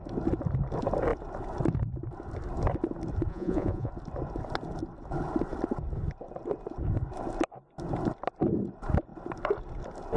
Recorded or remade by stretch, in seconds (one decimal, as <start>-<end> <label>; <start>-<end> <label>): 0.0-3.3 recorded; 3.3-3.9 remade; 3.9-10.2 recorded